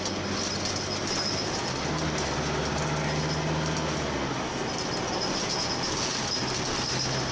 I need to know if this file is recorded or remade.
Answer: recorded